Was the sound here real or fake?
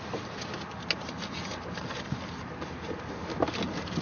real